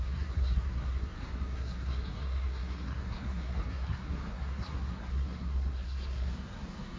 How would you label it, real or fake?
fake